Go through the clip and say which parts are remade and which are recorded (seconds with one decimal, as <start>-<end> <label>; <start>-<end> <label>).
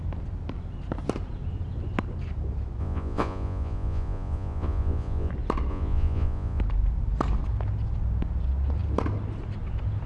0.0-2.8 recorded; 2.8-5.3 remade; 5.3-5.7 recorded; 5.7-6.6 remade; 6.6-10.1 recorded